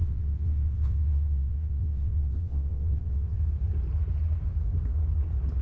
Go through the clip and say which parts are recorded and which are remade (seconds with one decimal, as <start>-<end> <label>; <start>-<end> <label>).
0.0-3.4 remade; 3.4-5.6 recorded